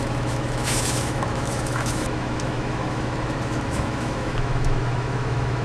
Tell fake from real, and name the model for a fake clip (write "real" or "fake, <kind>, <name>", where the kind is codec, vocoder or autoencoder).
fake, autoencoder, DAC-VAE